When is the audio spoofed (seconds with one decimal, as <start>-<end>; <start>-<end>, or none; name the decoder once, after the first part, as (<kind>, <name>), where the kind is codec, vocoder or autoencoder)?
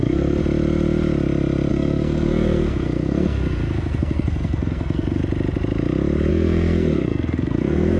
0.0-0.4 (codec, SNAC); 1.7-5.2; 6.3-8.0